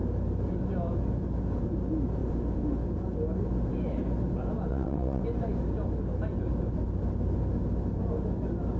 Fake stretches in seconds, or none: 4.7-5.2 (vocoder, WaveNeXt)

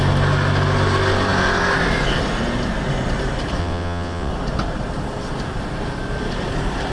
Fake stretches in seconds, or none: 3.6-4.3 (vocoder, WaveNeXt)

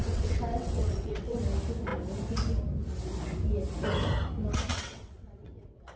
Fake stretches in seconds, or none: 0.0-1.4 (vocoder, WaveNeXt); 4.7-6.0

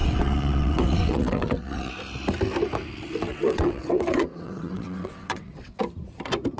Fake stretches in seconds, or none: 0.0-1.9 (vocoder, WaveNeXt); 3.3-5.8

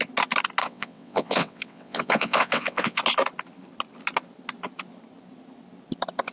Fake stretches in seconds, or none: 0.6-3.0 (vocoder, WaveNeXt)

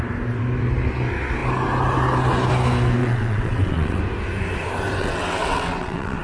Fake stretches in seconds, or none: 3.0-4.0 (vocoder, WaveNeXt); 5.0-6.2

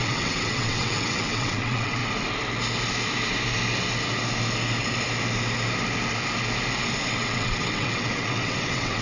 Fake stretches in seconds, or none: 0.0-2.0 (vocoder, WaveNeXt); 7.1-9.0